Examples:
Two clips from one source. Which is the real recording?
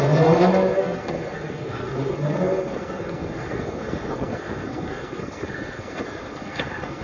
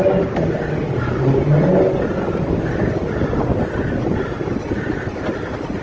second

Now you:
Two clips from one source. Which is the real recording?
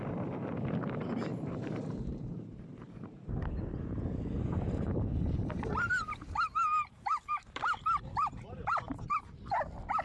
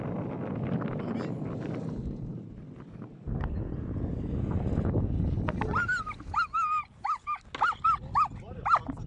second